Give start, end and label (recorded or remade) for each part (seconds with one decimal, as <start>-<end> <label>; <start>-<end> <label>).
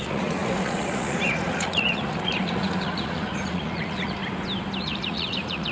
0.0-4.2 remade; 4.2-4.8 recorded; 4.8-5.7 remade